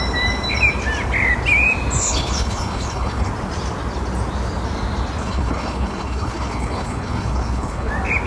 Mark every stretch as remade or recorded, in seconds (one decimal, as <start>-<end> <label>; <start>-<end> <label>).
0.0-2.0 recorded; 2.0-3.3 remade; 3.3-5.2 recorded; 5.2-7.9 remade; 7.9-8.3 recorded